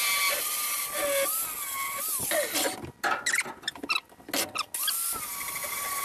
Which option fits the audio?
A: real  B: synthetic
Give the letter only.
A